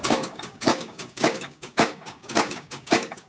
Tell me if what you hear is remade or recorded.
remade